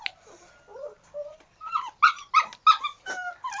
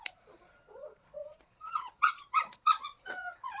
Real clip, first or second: first